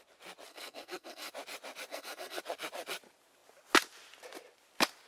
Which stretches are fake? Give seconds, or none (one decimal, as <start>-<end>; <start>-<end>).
0.5-1.3; 1.9-2.4